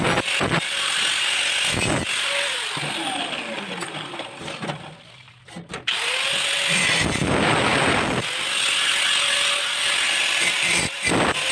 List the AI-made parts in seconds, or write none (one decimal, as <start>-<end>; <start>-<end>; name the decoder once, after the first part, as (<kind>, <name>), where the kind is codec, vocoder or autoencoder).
none